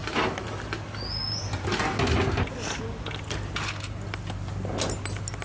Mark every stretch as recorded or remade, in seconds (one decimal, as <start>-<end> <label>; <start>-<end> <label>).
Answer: 0.0-5.4 recorded